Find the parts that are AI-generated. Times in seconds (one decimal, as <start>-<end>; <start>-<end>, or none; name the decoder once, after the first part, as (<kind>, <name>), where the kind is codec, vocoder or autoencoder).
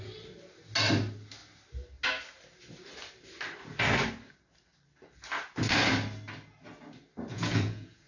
7.3-8.1 (vocoder, Vocos)